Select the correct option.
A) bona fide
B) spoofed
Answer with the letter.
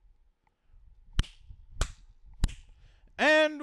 A